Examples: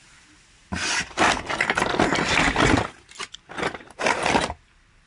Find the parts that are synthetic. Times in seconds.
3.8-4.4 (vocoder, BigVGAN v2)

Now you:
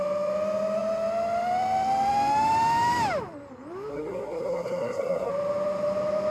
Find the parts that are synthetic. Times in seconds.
3.9-5.3 (codec, SNAC)

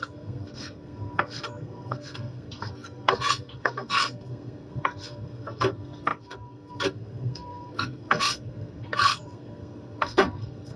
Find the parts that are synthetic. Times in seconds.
0.0-10.8 (codec, SNAC)

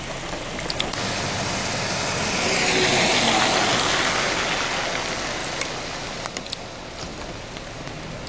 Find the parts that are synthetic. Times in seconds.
none

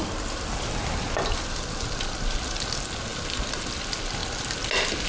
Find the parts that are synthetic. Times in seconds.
none

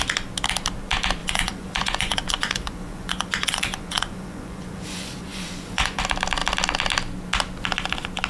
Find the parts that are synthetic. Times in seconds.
1.2-6.0 (vocoder, Vocos)